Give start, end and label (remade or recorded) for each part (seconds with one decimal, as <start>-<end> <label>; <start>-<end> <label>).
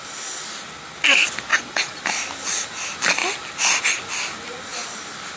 0.0-1.5 recorded; 1.5-2.0 remade; 2.0-5.4 recorded